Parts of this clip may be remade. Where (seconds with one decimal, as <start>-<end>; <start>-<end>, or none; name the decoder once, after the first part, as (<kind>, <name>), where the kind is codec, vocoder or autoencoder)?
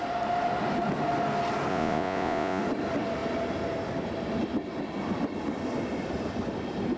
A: 1.7-2.6 (vocoder, Vocos)